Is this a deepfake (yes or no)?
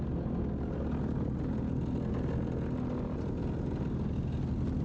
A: no